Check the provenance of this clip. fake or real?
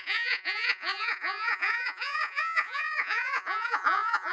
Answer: fake